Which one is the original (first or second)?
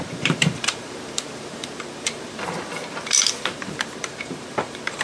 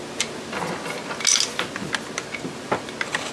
second